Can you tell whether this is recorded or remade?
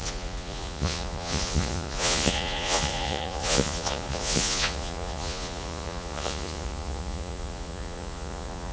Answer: remade